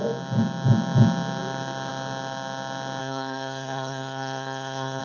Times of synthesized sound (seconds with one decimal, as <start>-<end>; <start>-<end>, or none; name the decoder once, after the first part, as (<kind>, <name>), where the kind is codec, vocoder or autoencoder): 3.0-5.0 (codec, SNAC)